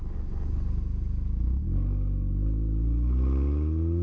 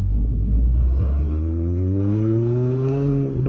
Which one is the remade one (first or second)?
second